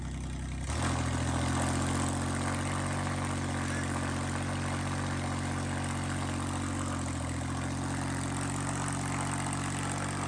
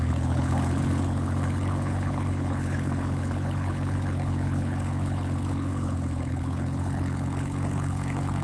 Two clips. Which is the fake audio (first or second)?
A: second